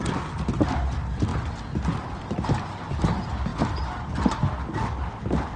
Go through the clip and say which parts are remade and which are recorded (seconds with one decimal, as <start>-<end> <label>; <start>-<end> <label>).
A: 0.0-5.6 recorded